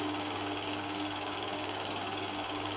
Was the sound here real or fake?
fake